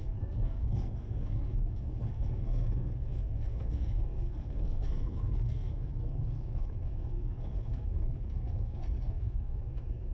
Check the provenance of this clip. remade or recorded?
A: remade